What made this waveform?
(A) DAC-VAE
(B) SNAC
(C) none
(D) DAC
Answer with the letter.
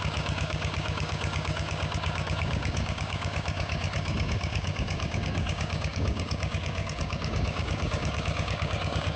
D